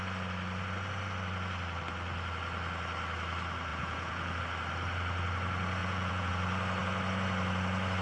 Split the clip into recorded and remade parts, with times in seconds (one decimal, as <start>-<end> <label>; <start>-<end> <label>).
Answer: 0.0-3.7 recorded; 3.7-4.4 remade; 4.4-5.8 recorded; 5.8-6.3 remade; 6.3-8.0 recorded